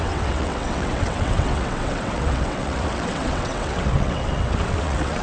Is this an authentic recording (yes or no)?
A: no